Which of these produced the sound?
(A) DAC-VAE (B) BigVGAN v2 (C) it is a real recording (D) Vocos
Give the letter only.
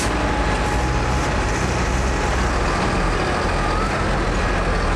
C